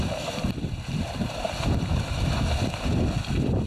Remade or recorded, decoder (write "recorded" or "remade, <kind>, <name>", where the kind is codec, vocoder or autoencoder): recorded